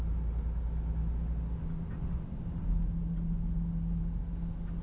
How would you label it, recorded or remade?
recorded